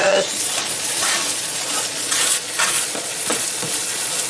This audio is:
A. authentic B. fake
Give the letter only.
B